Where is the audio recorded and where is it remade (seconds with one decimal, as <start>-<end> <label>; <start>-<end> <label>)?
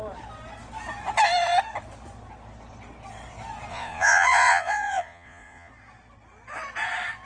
0.0-3.7 recorded; 3.7-5.7 remade; 5.7-7.3 recorded